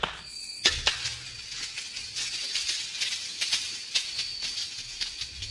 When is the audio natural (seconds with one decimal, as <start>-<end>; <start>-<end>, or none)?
0.0-2.9; 4.1-5.5